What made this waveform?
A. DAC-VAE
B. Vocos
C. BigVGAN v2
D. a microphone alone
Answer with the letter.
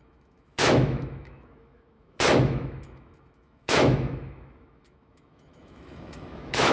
A